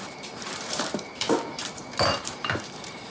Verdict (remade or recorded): remade